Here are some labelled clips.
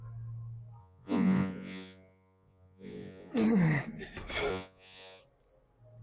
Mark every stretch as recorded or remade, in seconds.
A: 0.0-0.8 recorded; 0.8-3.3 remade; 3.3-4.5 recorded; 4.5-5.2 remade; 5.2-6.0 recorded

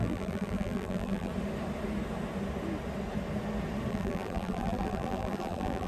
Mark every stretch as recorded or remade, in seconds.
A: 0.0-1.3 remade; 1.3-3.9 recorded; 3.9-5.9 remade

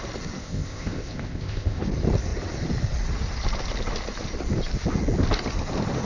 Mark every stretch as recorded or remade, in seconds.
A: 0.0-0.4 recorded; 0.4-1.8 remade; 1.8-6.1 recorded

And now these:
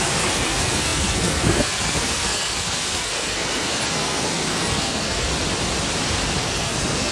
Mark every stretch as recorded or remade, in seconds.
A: 0.0-5.3 remade; 5.3-6.4 recorded; 6.4-7.1 remade

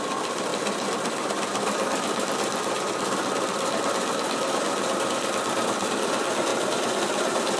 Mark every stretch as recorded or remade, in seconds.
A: 0.0-6.5 remade; 6.5-7.0 recorded; 7.0-7.6 remade

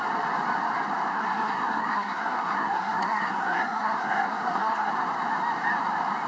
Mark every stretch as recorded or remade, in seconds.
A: 0.0-1.1 recorded; 1.1-4.9 remade; 4.9-6.3 recorded

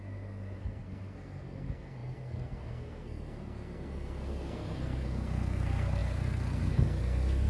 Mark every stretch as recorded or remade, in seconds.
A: 0.0-7.5 remade